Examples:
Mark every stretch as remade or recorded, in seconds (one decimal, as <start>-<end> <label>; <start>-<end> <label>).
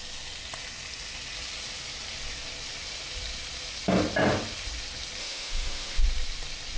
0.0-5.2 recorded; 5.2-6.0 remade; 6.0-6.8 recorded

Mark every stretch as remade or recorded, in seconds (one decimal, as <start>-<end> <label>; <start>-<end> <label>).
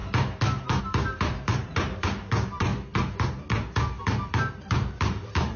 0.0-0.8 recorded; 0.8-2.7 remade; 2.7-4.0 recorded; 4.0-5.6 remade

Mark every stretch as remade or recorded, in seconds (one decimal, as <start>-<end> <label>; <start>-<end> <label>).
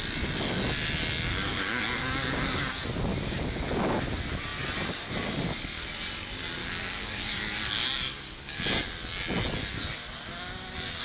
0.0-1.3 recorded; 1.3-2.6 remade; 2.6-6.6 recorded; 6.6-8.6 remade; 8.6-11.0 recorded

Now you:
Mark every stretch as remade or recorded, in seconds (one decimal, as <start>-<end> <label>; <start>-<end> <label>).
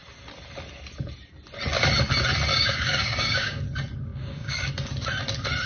0.0-2.5 recorded; 2.5-3.6 remade; 3.6-4.1 recorded; 4.1-4.7 remade; 4.7-5.7 recorded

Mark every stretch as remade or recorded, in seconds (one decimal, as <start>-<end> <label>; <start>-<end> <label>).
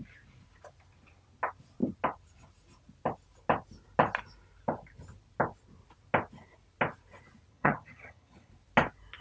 0.0-7.5 recorded; 7.5-8.5 remade; 8.5-9.2 recorded